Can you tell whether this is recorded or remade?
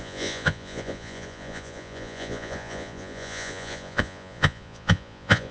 remade